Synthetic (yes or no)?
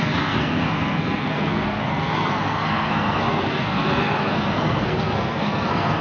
yes